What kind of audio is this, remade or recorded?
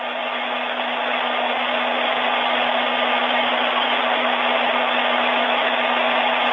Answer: recorded